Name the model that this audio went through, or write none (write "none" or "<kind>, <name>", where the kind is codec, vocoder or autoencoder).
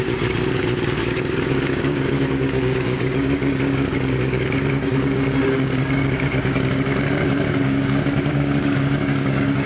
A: codec, DAC